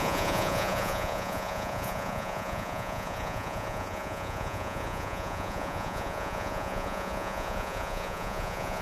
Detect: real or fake fake